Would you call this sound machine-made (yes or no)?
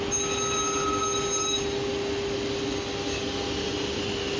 no